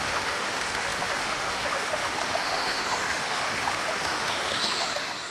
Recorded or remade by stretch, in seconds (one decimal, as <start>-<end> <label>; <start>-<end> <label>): 0.0-5.3 remade